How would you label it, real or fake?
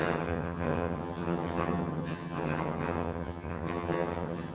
fake